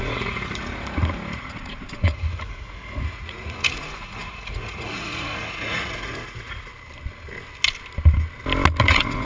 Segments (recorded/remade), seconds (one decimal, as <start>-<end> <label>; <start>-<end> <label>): 0.0-6.7 remade; 6.7-8.8 recorded; 8.8-9.3 remade